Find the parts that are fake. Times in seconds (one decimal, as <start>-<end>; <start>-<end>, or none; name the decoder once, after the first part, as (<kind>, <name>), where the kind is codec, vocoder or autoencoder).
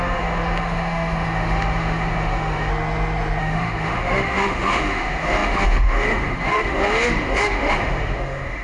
0.0-2.7 (autoencoder, DAC-VAE); 3.4-8.6